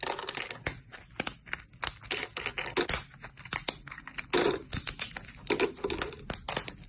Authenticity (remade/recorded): recorded